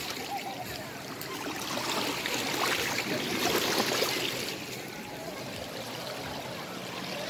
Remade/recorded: recorded